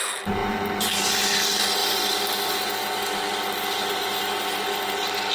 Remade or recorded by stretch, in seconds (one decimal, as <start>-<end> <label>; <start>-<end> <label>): 0.0-5.3 recorded